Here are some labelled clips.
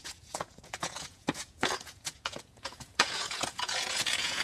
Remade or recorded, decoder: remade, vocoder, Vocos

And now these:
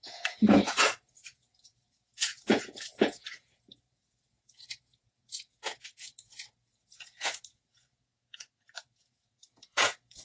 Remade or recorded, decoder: remade, vocoder, Vocos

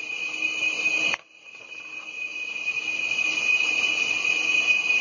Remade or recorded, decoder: recorded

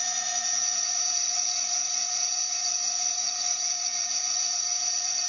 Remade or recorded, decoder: remade, vocoder, Vocos